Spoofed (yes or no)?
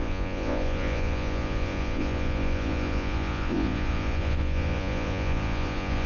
yes